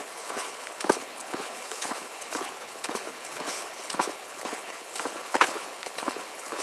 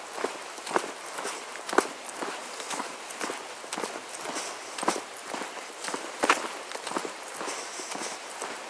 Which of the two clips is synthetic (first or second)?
first